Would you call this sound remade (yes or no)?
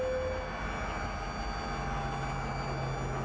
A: no